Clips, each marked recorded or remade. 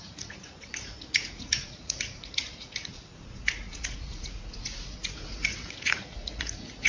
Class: remade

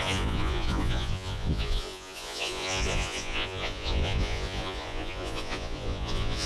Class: remade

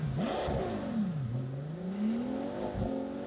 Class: recorded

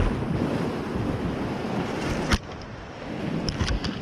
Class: recorded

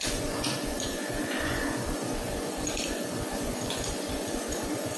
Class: remade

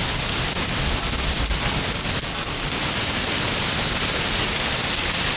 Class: recorded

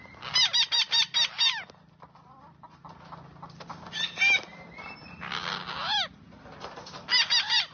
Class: recorded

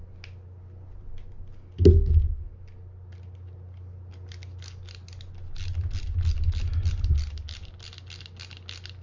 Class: recorded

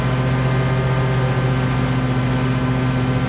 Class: recorded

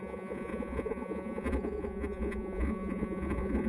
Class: remade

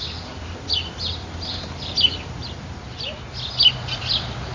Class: recorded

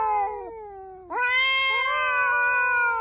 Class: recorded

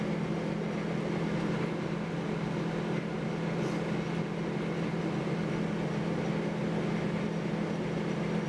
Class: recorded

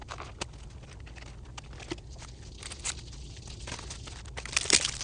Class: recorded